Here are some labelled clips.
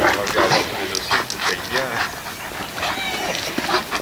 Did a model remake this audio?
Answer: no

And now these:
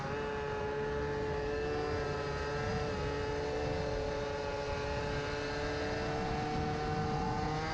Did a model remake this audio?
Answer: no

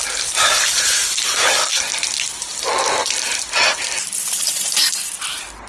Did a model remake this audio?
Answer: no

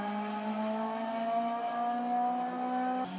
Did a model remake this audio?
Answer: no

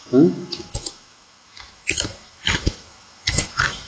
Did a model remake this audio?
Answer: yes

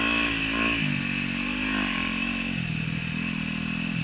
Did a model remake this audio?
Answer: no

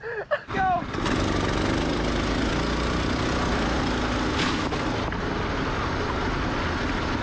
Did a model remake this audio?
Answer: no